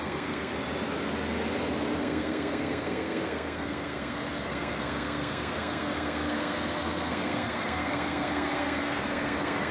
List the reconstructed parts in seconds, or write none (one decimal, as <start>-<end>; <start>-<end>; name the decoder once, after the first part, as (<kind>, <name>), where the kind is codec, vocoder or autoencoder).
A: 0.0-0.5 (codec, SNAC); 2.0-9.7